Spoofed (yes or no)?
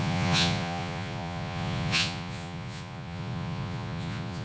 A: yes